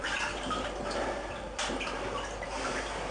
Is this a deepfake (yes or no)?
yes